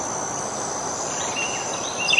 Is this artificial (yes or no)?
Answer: no